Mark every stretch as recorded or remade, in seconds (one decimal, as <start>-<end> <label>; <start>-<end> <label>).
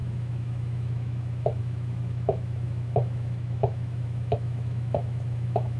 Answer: 0.0-5.8 remade